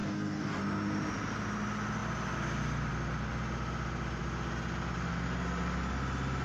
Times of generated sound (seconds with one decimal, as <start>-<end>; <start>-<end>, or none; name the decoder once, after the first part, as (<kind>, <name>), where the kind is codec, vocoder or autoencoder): 0.0-0.6 (codec, DAC)